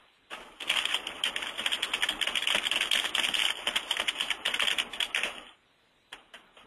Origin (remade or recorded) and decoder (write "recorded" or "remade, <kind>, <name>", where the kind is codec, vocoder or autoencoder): recorded